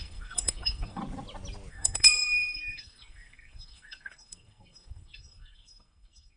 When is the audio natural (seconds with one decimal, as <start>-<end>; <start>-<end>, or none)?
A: 1.0-1.7